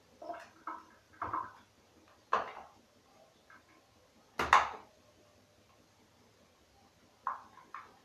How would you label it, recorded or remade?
recorded